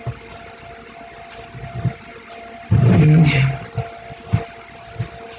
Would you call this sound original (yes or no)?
yes